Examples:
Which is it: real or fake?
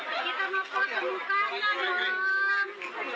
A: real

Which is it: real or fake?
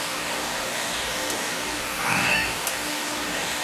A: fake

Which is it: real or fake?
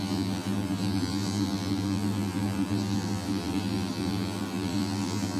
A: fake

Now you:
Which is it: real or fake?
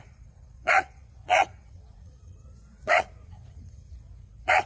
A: fake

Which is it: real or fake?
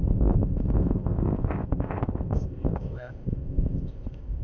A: fake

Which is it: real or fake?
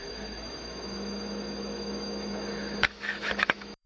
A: fake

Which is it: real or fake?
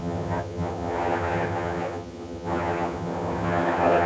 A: fake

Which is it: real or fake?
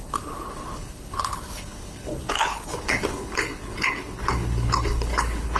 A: fake